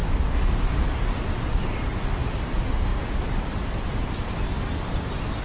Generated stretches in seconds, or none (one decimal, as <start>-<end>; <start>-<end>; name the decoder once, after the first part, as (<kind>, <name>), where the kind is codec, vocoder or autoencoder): none